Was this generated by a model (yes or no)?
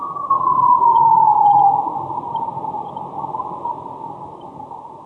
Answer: no